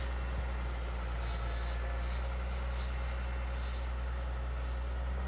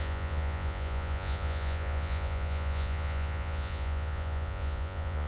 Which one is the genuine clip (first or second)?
first